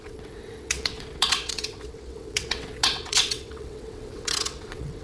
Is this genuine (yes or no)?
no